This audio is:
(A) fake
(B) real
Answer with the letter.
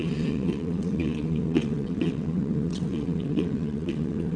A